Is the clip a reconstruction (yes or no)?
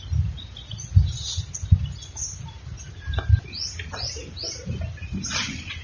no